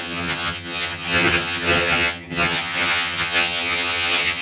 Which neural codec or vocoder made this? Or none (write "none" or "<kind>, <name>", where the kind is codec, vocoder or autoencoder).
vocoder, HiFi-GAN